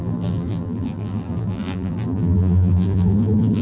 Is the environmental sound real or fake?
fake